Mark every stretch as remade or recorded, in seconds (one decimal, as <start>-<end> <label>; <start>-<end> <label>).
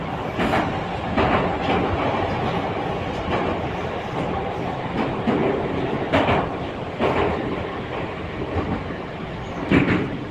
0.0-10.3 recorded